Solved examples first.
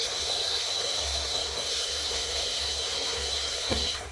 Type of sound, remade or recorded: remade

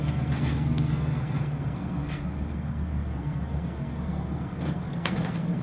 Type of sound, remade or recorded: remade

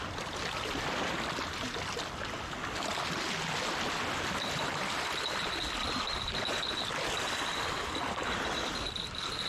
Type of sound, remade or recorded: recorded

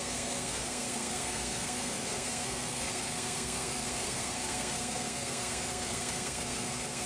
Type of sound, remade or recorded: remade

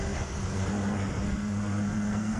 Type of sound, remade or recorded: remade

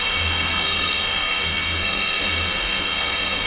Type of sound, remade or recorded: remade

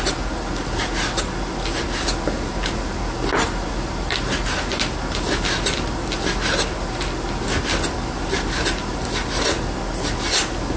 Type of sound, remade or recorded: recorded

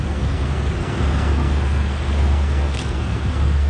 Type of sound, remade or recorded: remade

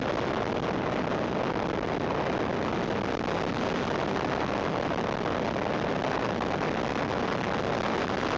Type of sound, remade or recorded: recorded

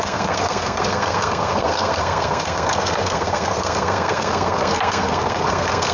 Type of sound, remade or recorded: remade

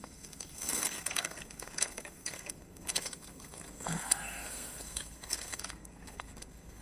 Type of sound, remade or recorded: remade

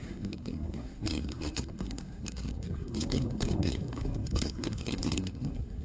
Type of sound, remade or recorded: remade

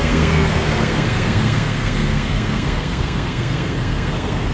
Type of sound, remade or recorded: remade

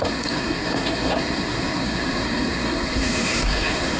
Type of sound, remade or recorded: remade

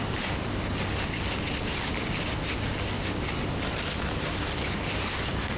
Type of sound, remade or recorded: recorded